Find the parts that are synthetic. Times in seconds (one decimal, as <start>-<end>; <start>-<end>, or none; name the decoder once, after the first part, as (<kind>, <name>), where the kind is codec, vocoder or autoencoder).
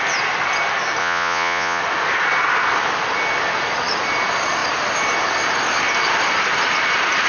1.0-1.8 (vocoder, Vocos)